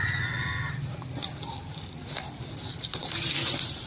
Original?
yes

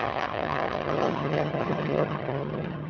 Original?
no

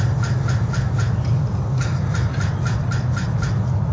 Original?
yes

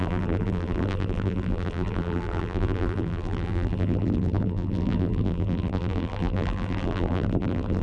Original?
no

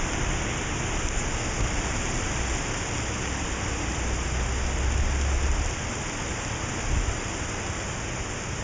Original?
yes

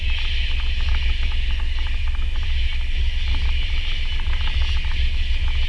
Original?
yes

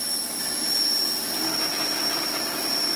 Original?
no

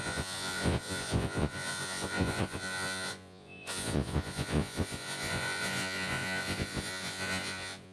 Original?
no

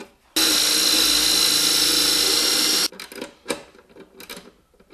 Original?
yes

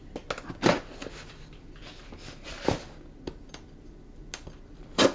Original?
yes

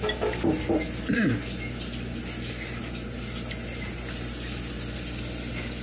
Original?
yes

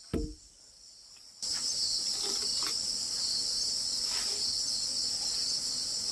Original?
yes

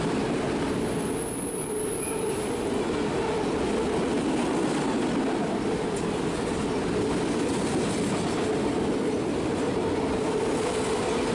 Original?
yes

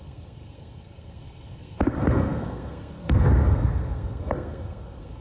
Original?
no